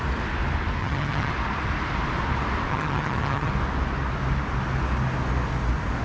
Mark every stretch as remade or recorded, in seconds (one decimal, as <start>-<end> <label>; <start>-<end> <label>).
0.0-0.8 recorded; 0.8-1.3 remade; 1.3-2.7 recorded; 2.7-3.5 remade; 3.5-6.0 recorded